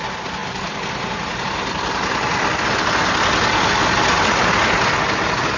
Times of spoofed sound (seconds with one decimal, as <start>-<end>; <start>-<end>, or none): none